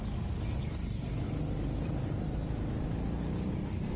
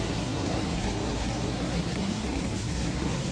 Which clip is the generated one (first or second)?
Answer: second